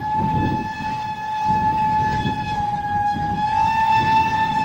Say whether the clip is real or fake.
fake